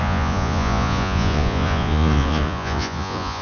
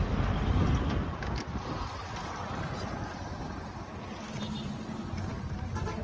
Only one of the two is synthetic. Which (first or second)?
first